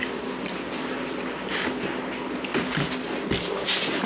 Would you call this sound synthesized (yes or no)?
no